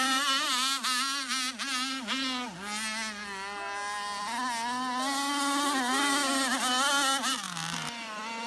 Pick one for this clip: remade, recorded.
recorded